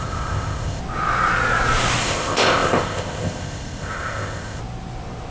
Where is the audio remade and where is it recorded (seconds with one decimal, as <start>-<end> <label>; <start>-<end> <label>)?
0.0-0.8 remade; 0.8-2.0 recorded; 2.0-4.6 remade; 4.6-5.3 recorded